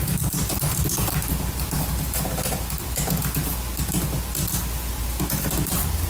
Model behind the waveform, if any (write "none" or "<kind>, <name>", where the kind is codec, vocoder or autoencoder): none